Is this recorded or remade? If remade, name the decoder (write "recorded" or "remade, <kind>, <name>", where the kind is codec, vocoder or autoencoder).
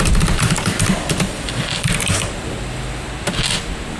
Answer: remade, vocoder, BigVGAN v2